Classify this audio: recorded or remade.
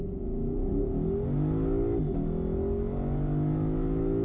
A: recorded